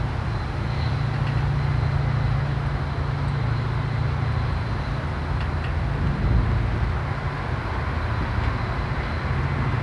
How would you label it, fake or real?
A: real